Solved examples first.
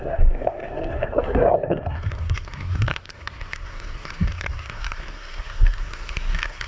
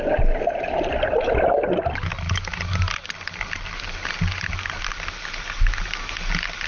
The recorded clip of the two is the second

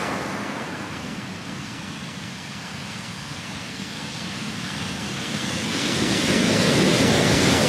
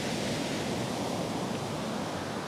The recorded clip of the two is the second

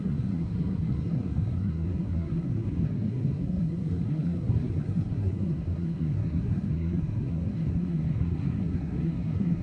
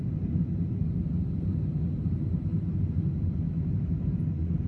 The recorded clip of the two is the second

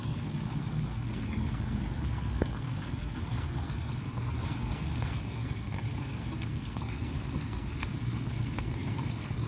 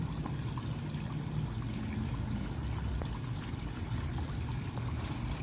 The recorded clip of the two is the second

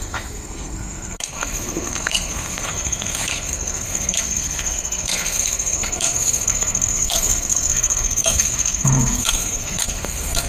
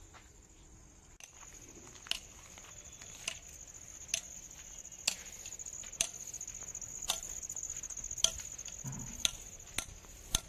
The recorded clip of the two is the second